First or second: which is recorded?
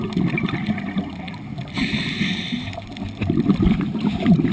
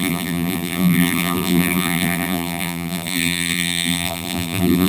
first